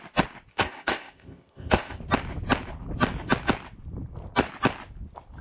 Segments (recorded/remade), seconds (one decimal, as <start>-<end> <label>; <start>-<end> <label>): 0.0-0.5 recorded; 0.5-2.0 remade; 2.0-5.4 recorded